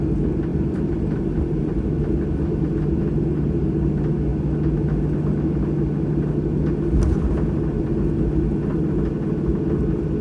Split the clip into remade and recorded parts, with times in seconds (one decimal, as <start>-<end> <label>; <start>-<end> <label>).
0.0-0.5 recorded; 0.5-1.9 remade; 1.9-10.2 recorded